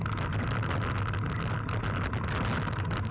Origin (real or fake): real